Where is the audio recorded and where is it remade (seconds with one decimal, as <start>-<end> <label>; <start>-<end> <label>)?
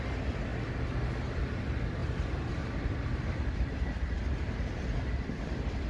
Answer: 0.0-5.9 remade